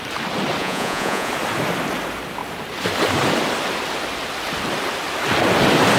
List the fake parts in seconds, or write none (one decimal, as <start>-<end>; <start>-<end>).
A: 0.6-1.3